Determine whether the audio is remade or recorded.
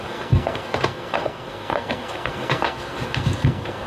remade